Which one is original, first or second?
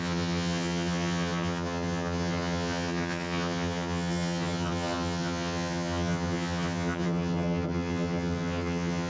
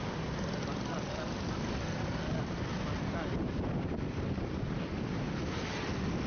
second